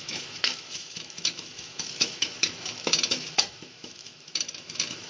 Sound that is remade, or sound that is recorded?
remade